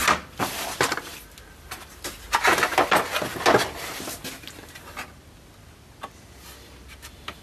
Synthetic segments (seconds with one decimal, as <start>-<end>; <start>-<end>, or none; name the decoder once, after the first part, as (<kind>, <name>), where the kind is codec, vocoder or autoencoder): 0.0-1.9 (vocoder, BigVGAN v2)